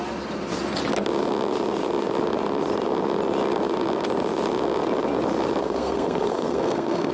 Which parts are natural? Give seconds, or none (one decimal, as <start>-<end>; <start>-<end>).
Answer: 0.0-5.6